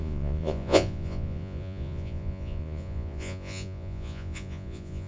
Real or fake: fake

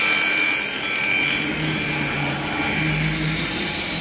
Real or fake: real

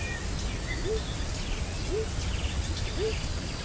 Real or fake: real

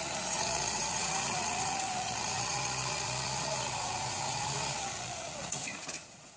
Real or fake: fake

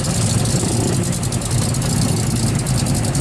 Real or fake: real